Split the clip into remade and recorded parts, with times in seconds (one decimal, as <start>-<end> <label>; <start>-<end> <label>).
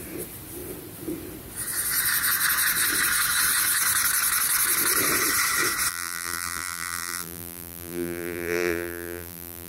0.0-5.9 recorded; 5.9-9.7 remade